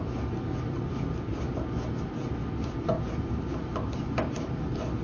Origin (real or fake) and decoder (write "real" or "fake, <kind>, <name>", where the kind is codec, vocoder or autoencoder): real